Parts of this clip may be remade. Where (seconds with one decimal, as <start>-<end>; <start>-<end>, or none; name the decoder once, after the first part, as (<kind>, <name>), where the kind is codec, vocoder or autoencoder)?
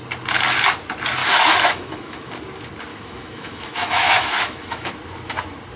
1.2-2.3 (autoencoder, DAC-VAE); 2.9-4.9